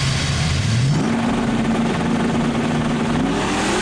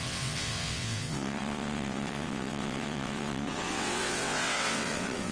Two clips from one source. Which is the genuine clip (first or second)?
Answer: first